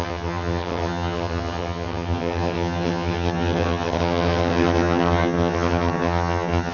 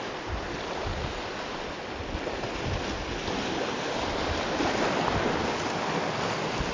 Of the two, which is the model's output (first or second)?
first